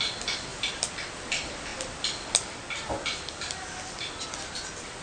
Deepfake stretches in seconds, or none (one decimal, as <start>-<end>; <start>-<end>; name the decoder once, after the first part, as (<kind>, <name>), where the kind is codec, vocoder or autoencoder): none